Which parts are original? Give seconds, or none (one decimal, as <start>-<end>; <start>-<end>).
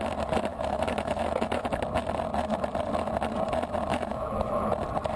0.0-0.5; 1.7-3.9; 4.7-5.2